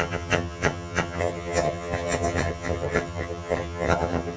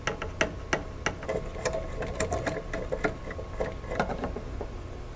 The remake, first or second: first